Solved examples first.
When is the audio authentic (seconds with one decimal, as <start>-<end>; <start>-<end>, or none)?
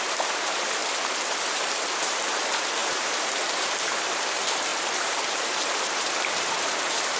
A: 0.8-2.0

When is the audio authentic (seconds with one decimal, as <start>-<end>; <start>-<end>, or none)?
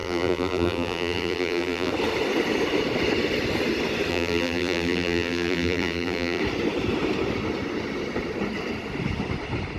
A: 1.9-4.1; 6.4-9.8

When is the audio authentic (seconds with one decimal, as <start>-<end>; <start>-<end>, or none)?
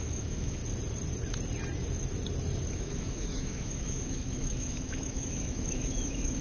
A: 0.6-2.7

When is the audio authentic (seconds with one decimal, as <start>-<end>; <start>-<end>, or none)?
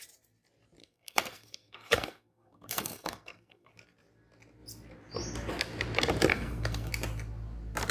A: 0.0-0.8; 3.7-6.3; 6.9-7.9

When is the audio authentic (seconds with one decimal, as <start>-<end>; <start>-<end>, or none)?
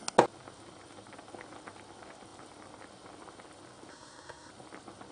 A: 0.0-3.9; 4.5-5.1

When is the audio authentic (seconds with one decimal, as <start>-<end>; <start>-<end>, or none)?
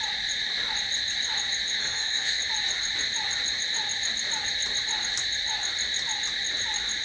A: 0.0-1.8; 2.4-7.0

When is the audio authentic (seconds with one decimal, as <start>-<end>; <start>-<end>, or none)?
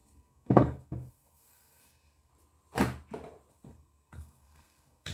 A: 2.3-3.5